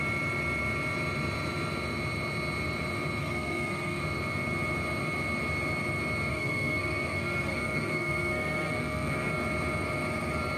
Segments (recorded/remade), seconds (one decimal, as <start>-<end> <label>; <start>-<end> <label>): 0.0-3.2 recorded; 3.2-4.0 remade; 4.0-6.3 recorded; 6.3-9.3 remade; 9.3-10.6 recorded